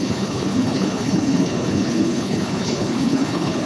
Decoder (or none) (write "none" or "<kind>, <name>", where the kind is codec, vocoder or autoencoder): codec, HILCodec